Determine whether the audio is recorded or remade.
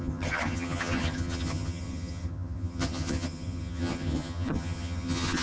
remade